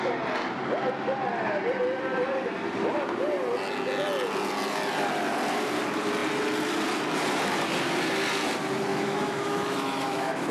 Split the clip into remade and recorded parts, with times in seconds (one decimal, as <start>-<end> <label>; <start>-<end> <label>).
0.0-8.9 recorded; 8.9-10.5 remade

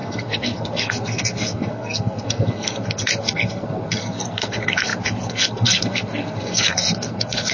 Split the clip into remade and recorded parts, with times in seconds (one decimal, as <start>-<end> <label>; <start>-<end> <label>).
0.0-7.5 remade